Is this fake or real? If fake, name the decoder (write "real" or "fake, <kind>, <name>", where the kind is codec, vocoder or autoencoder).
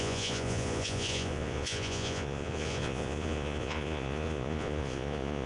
fake, vocoder, Vocos